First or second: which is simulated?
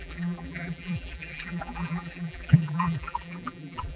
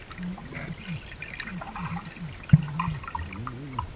first